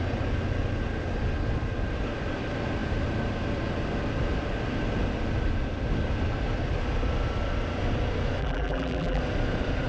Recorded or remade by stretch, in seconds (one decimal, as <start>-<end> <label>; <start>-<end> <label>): 0.0-8.4 recorded; 8.4-9.2 remade; 9.2-9.9 recorded